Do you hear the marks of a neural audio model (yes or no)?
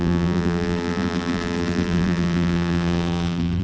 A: yes